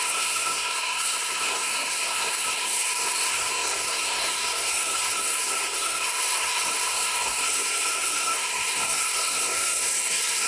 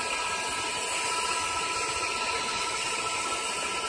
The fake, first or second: first